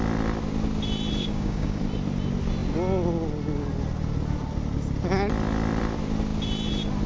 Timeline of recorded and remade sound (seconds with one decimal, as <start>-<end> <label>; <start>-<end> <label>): 0.0-1.2 recorded; 1.2-1.8 remade; 1.8-7.1 recorded